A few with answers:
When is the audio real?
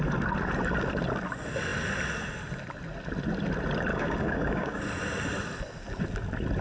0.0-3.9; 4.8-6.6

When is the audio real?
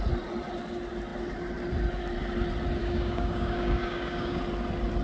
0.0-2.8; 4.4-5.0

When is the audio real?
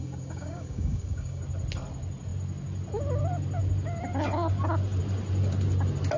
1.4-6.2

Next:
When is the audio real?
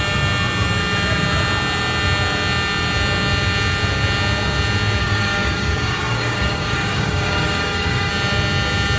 0.0-5.0; 8.1-9.0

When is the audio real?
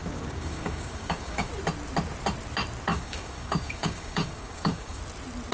1.5-2.9; 5.0-5.5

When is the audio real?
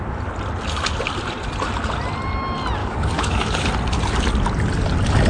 0.0-2.8; 3.7-5.3